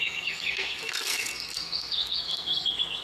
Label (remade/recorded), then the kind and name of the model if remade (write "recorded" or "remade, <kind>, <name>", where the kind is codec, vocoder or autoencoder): remade, codec, SNAC